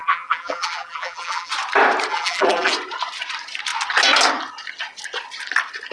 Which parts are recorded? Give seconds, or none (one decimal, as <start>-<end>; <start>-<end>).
1.5-2.1; 2.7-5.9